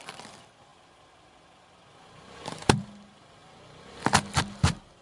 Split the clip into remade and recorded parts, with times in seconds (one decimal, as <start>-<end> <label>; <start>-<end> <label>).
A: 0.0-5.0 recorded